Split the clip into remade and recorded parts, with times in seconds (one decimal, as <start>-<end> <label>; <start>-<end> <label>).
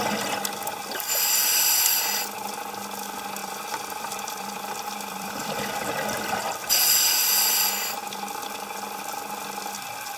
0.0-3.4 recorded; 3.4-5.3 remade; 5.3-10.2 recorded